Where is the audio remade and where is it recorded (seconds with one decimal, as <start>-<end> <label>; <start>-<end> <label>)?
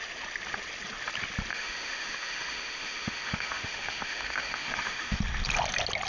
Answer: 0.0-1.5 recorded; 1.5-5.2 remade; 5.2-6.1 recorded